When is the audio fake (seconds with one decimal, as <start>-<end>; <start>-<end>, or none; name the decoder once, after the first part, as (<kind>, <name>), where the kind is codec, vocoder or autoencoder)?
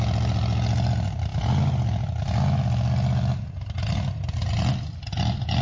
none